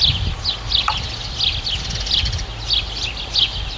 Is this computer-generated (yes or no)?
no